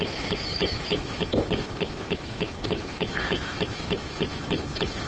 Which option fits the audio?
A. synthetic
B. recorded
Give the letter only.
A